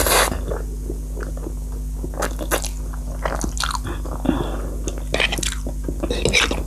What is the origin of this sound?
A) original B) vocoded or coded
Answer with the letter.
A